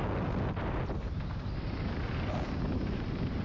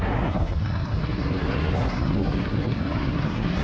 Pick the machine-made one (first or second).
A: second